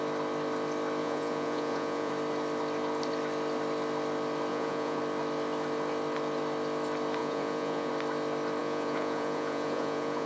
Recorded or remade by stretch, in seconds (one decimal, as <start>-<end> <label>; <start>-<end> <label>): 0.0-1.0 recorded; 1.0-2.1 remade; 2.1-4.5 recorded; 4.5-5.0 remade; 5.0-7.2 recorded; 7.2-7.9 remade; 7.9-8.6 recorded; 8.6-10.3 remade